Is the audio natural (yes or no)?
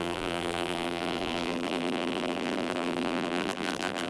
no